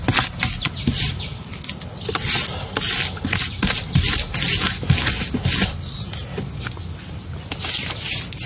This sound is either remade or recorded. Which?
recorded